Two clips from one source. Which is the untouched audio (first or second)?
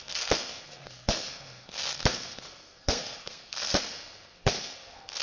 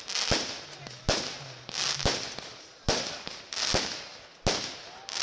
second